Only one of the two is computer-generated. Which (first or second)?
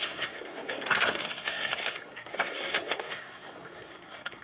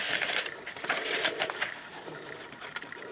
first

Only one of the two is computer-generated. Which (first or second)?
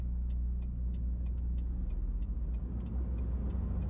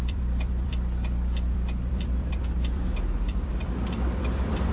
second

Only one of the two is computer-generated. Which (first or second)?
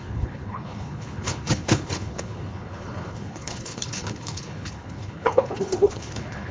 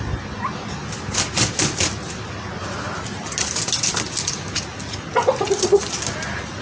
first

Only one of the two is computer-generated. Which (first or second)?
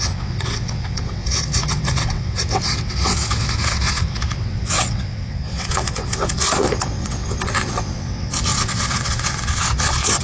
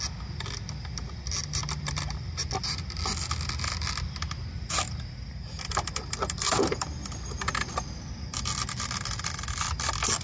first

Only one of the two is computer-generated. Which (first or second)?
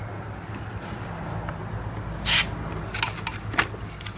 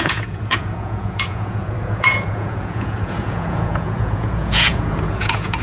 second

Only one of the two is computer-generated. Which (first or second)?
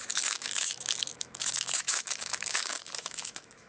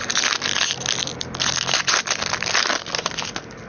first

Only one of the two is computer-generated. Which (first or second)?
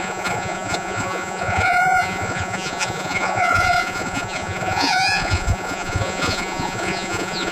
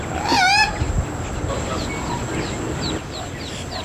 first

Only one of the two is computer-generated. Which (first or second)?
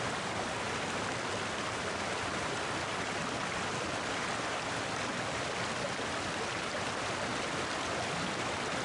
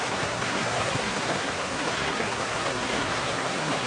second